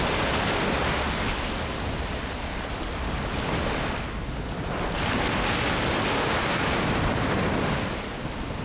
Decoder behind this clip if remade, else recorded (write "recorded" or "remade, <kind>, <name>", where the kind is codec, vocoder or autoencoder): recorded